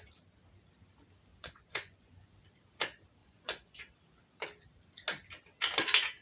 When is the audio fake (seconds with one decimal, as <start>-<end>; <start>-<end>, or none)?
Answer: 1.3-2.3; 3.2-3.8